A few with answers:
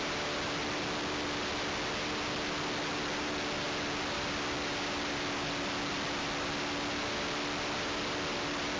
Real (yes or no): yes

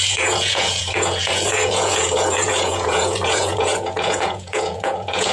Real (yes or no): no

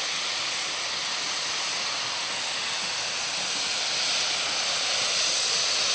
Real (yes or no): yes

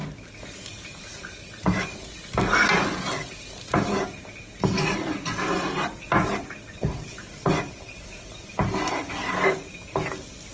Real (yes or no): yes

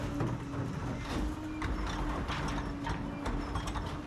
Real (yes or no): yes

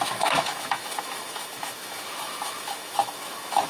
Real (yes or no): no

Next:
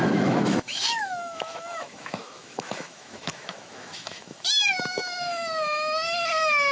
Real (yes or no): no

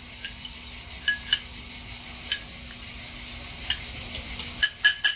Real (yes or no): yes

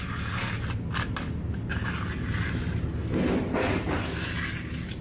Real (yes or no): yes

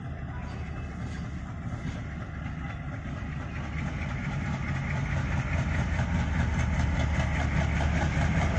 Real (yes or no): yes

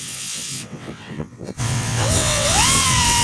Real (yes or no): no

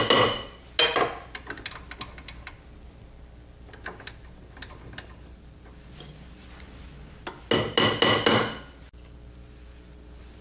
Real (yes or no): yes